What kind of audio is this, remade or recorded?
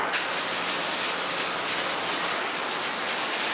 recorded